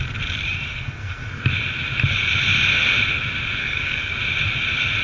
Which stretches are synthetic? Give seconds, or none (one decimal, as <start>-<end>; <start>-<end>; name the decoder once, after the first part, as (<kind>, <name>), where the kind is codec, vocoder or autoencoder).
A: 0.7-1.4 (codec, SNAC); 3.6-4.2